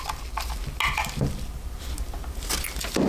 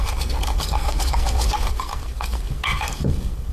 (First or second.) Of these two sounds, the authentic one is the first